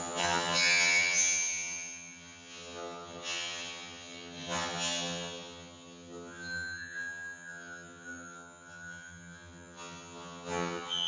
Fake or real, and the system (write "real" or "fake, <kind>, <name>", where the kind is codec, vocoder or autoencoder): fake, vocoder, HiFi-GAN